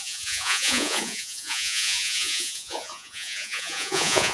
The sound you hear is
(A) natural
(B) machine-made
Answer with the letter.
B